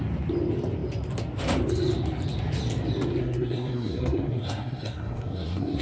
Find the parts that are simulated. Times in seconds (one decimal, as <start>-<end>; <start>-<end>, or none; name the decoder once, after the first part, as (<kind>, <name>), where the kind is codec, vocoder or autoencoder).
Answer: 3.2-5.8 (codec, SNAC)